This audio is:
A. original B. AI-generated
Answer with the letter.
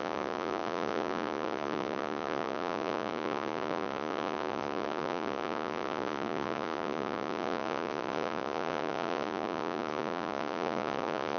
B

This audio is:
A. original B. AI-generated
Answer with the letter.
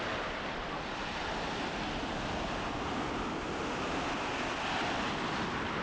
A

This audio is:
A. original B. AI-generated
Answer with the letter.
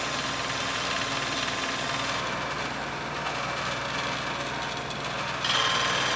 A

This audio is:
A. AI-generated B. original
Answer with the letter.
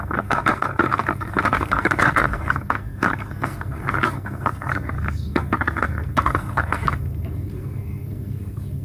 A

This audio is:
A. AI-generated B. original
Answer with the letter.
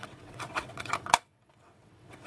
A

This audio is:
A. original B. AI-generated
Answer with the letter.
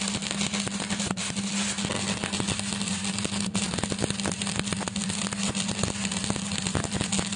A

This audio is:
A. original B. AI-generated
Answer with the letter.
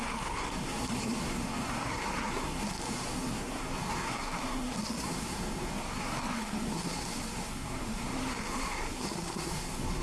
B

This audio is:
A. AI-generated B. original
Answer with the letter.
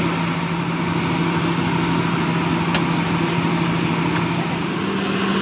B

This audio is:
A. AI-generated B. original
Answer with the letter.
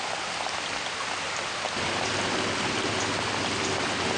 B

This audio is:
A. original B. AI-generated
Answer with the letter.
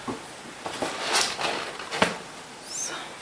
A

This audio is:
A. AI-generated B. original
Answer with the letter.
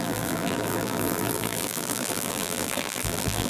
A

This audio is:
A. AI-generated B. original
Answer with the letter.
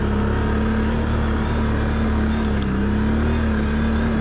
B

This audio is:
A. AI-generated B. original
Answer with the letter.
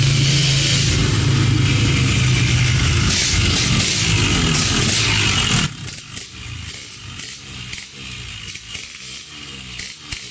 B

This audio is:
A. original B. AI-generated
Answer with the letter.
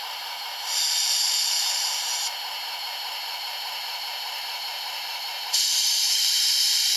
B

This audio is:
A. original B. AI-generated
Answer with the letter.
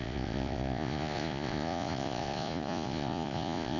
B